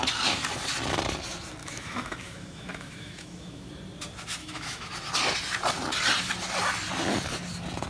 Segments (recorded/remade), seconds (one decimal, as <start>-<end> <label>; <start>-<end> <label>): 0.0-1.6 recorded; 1.6-3.7 remade; 3.7-4.4 recorded; 4.4-4.9 remade; 4.9-7.9 recorded

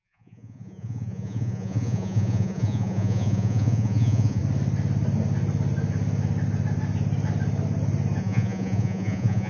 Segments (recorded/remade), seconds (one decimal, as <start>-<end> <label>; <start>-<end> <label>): 0.0-4.4 remade; 4.4-8.2 recorded; 8.2-9.5 remade